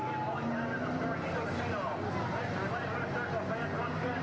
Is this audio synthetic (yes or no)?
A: no